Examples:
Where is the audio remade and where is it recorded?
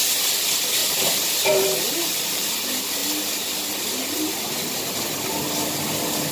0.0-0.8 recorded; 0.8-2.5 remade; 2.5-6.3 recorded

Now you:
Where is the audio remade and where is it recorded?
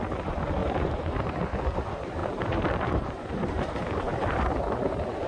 0.0-0.6 recorded; 0.6-1.3 remade; 1.3-2.2 recorded; 2.2-4.5 remade; 4.5-5.3 recorded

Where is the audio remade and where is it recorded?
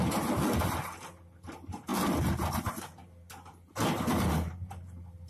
0.0-5.3 recorded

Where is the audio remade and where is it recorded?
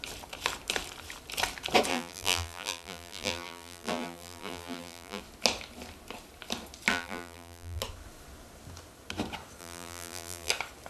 0.0-1.9 recorded; 1.9-5.2 remade; 5.2-6.9 recorded; 6.9-7.8 remade; 7.8-9.6 recorded; 9.6-10.5 remade; 10.5-10.9 recorded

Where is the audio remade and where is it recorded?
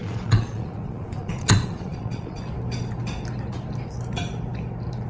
0.0-2.4 remade; 2.4-5.1 recorded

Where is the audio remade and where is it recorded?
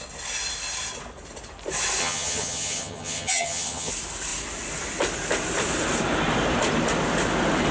0.0-2.0 recorded; 2.0-3.9 remade; 3.9-7.7 recorded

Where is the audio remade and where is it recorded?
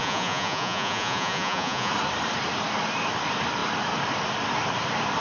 0.0-1.9 remade; 1.9-5.2 recorded